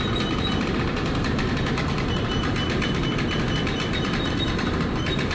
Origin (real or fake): real